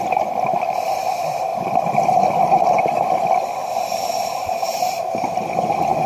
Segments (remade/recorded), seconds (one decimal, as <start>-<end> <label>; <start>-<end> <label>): 0.0-4.4 recorded; 4.4-5.0 remade; 5.0-6.1 recorded